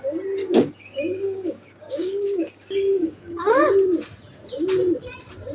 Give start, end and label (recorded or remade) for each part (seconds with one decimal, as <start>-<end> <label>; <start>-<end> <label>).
0.0-0.4 recorded; 0.4-3.7 remade; 3.7-5.5 recorded